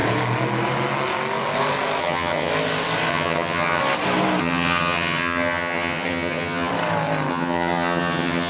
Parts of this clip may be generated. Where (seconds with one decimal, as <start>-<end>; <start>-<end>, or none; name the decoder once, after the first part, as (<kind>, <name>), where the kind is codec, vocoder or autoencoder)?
2.0-2.5 (vocoder, HiFi-GAN); 3.1-3.8; 4.4-6.7; 7.3-8.5